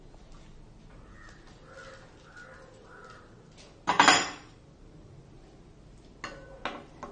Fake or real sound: real